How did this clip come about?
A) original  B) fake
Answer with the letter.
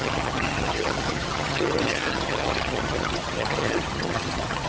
B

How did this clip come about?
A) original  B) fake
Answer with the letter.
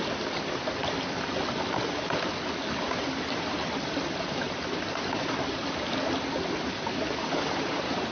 A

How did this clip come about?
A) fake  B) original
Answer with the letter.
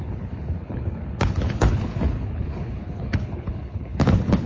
A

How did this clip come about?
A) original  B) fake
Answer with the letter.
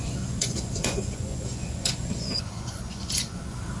B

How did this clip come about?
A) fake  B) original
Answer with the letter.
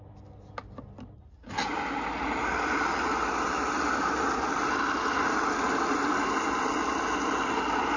B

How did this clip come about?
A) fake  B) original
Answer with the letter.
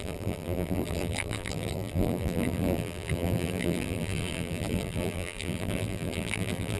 A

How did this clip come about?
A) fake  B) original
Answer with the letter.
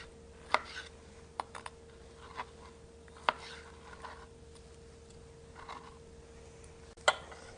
B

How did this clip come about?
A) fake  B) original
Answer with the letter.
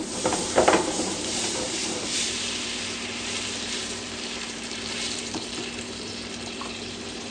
A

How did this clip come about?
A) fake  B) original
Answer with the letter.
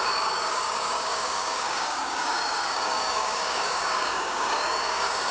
A